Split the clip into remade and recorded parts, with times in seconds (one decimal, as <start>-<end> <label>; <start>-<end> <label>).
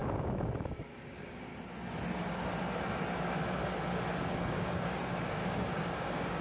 0.0-1.5 remade; 1.5-4.2 recorded; 4.2-6.4 remade